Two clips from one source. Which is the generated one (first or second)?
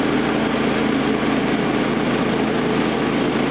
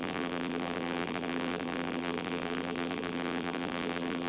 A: second